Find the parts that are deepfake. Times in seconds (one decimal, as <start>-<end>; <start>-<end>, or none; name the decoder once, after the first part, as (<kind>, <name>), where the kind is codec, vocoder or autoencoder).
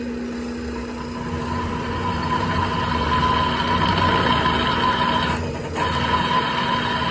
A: 1.7-2.6 (vocoder, BigVGAN v2)